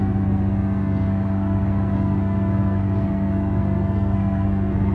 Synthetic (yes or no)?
yes